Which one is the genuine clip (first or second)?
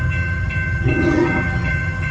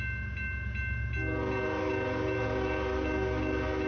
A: second